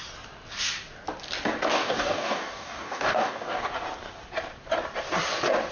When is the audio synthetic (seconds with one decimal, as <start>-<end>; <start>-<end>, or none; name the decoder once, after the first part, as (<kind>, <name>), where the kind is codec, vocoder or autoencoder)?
1.7-3.7 (codec, DAC)